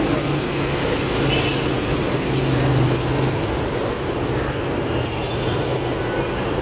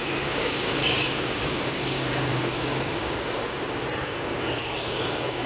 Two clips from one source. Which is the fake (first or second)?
second